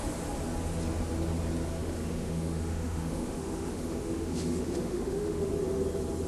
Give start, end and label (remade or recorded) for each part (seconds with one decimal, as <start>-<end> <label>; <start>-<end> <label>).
0.0-1.7 recorded; 1.7-5.5 remade; 5.5-6.3 recorded